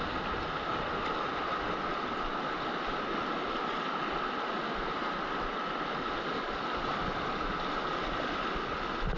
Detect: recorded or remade recorded